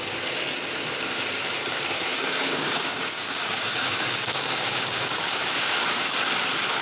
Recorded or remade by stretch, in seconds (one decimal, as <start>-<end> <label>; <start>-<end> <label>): 0.0-2.1 recorded; 2.1-6.2 remade; 6.2-6.8 recorded